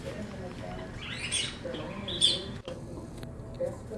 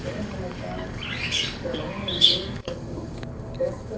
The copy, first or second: second